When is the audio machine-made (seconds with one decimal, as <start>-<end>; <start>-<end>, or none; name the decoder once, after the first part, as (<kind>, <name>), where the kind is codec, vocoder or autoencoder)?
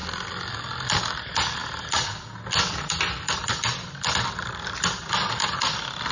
0.0-1.6 (vocoder, BigVGAN v2); 5.3-6.1